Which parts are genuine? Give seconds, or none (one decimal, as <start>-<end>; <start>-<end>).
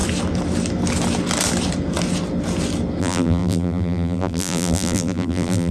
0.0-3.0